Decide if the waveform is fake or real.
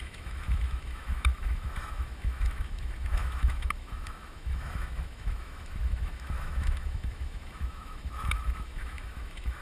fake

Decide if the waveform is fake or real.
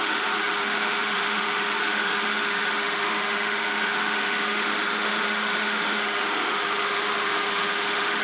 fake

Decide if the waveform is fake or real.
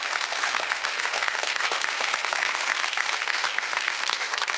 fake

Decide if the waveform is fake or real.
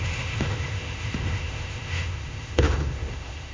fake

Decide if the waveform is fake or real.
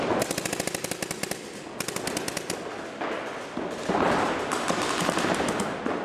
real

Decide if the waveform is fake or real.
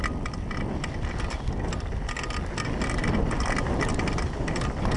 real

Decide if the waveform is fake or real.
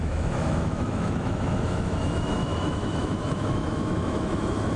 fake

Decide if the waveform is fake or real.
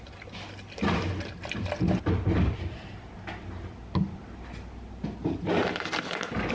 real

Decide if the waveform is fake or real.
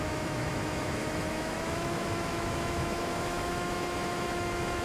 fake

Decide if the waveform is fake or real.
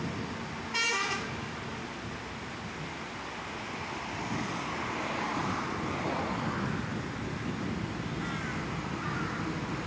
real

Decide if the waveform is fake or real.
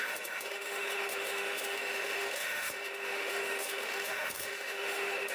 fake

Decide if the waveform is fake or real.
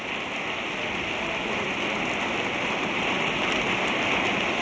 real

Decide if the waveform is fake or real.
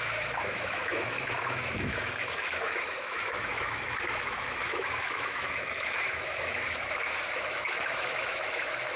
fake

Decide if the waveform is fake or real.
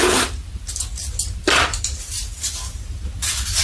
real